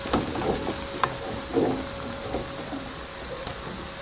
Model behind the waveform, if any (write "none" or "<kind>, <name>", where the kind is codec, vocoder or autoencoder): none